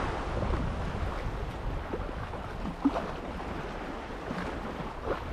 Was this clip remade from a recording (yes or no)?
no